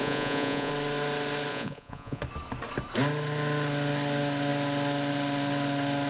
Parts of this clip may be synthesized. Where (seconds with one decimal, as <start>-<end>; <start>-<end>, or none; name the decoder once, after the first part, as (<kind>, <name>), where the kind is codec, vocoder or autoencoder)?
0.0-0.7 (vocoder, Vocos); 1.5-2.2